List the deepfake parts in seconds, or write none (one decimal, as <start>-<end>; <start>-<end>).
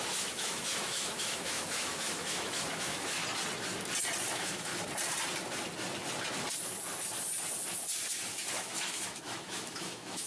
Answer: 0.0-3.2; 4.3-4.7; 8.5-10.3